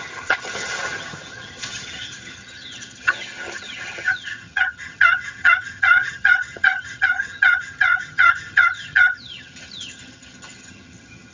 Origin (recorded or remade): remade